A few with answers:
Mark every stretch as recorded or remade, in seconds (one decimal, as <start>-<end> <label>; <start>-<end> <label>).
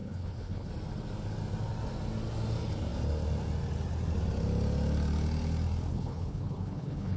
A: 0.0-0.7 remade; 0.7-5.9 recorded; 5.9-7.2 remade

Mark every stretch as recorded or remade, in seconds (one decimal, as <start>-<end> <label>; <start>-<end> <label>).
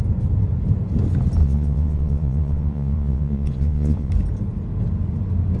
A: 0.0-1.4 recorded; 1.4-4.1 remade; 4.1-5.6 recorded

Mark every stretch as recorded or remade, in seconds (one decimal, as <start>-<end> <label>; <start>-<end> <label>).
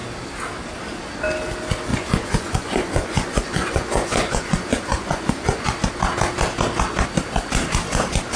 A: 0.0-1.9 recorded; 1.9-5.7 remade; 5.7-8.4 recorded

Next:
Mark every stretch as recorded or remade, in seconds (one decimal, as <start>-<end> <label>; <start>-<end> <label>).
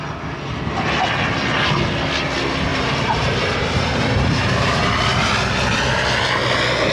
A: 0.0-2.7 recorded; 2.7-4.9 remade; 4.9-6.9 recorded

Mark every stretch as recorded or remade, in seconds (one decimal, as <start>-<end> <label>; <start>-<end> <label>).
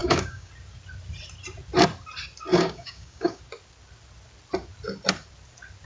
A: 0.0-0.5 remade; 0.5-2.5 recorded; 2.5-3.4 remade; 3.4-5.8 recorded